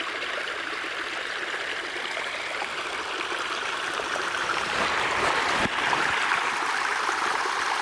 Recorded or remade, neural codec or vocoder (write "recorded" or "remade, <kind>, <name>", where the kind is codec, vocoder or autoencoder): remade, vocoder, BigVGAN v2